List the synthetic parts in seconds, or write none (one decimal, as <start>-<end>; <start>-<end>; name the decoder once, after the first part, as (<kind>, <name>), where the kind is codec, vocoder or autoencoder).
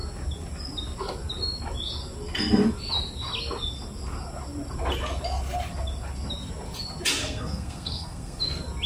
7.2-8.4 (codec, SNAC)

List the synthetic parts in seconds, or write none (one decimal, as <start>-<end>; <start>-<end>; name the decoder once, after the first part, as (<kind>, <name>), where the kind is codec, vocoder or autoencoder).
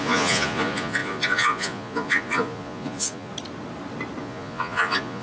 0.0-3.3 (vocoder, Vocos); 4.2-5.2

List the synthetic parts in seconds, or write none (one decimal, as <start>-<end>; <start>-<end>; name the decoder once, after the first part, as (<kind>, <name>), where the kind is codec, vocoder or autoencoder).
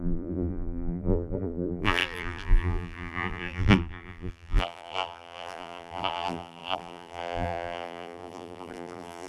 0.0-9.3 (vocoder, BigVGAN v2)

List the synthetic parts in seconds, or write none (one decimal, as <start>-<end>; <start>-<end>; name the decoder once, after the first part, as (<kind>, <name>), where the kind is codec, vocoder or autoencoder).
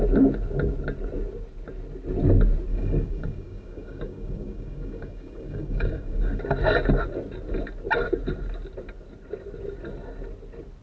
2.7-6.4 (codec, DAC)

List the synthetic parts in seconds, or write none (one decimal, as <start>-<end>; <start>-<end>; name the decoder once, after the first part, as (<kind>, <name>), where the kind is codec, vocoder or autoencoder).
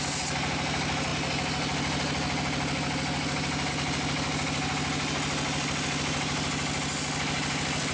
none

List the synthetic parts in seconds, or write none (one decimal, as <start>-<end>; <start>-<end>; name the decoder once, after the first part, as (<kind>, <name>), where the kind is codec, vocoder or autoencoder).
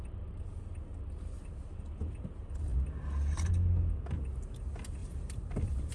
5.0-5.9 (vocoder, BigVGAN v2)